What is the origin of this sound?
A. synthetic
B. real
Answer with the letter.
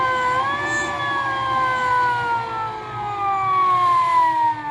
B